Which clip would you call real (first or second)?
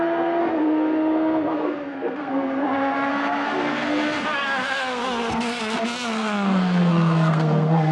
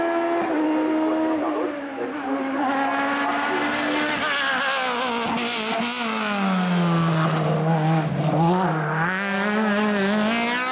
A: second